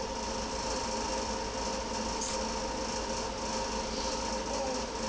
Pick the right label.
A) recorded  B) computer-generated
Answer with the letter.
A